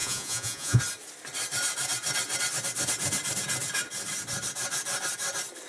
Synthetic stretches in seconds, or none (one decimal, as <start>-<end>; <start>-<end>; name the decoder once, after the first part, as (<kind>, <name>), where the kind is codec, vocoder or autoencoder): 0.0-0.8 (vocoder, Vocos)